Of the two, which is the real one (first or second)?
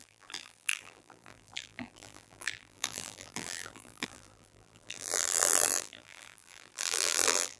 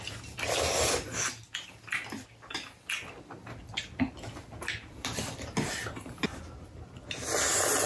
second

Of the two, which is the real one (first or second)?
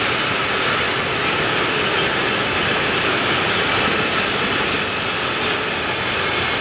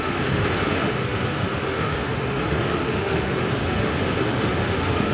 first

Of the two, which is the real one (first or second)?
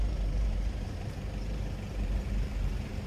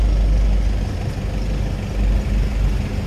second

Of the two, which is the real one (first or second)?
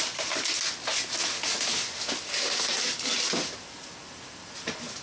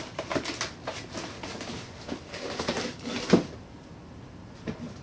first